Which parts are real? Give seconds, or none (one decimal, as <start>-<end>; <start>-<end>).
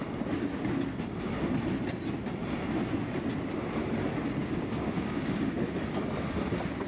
0.0-4.4; 5.5-6.9